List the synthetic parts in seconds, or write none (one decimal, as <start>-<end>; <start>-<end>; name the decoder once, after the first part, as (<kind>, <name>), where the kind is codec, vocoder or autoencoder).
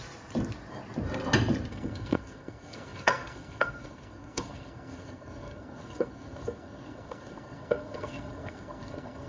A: 1.7-9.3 (codec, SNAC)